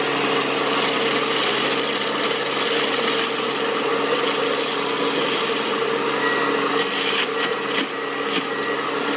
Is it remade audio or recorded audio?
recorded